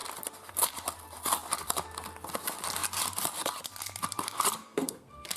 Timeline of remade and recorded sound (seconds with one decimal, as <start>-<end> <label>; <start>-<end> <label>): 0.0-4.6 recorded; 4.6-5.4 remade